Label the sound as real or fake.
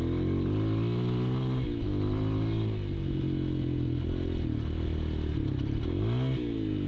real